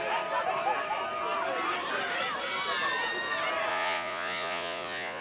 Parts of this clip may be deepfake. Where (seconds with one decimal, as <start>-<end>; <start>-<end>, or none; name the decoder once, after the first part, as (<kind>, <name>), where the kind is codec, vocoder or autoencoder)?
3.7-5.2 (vocoder, Vocos)